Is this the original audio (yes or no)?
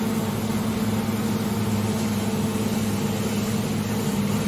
yes